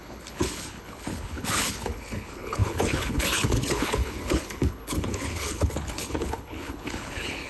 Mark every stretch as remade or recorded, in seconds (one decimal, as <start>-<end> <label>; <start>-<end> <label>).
0.0-7.5 remade